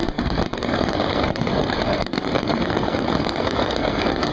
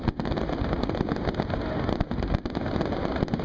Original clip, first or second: second